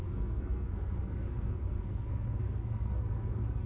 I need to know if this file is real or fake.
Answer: fake